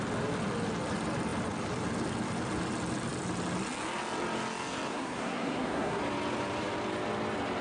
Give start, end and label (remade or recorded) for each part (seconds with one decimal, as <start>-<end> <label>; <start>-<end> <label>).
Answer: 0.0-4.9 recorded; 4.9-6.0 remade; 6.0-7.6 recorded